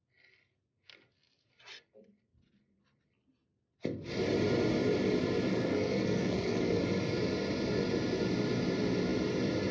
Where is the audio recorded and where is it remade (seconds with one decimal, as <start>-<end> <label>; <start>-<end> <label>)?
0.0-5.5 recorded; 5.5-6.8 remade; 6.8-9.7 recorded

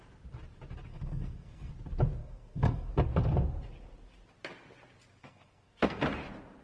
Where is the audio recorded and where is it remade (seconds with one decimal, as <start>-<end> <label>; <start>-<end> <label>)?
0.0-0.9 recorded; 0.9-1.7 remade; 1.7-2.2 recorded; 2.2-2.9 remade; 2.9-5.2 recorded; 5.2-6.0 remade; 6.0-6.6 recorded

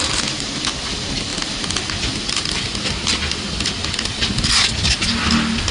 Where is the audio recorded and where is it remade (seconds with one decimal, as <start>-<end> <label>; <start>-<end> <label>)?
0.0-5.7 recorded

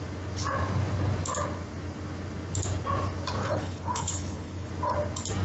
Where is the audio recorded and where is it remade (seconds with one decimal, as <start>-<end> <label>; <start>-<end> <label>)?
0.0-3.4 recorded; 3.4-4.7 remade; 4.7-5.4 recorded

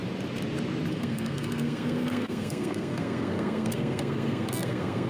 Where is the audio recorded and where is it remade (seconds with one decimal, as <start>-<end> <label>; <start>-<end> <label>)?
0.0-0.9 recorded; 0.9-5.1 remade

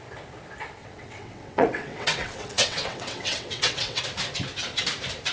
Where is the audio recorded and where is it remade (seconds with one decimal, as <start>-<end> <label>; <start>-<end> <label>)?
0.0-0.8 recorded; 0.8-4.0 remade; 4.0-5.3 recorded